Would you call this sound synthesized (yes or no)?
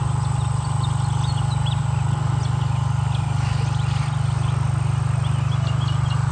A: no